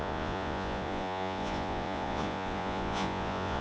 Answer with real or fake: fake